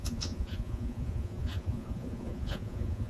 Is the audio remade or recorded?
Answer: remade